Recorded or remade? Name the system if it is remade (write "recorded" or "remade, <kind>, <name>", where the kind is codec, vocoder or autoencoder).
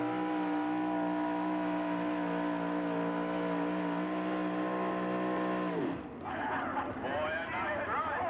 recorded